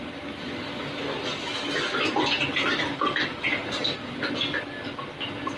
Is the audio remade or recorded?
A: recorded